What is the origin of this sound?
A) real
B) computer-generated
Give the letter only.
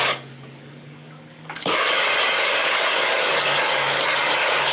B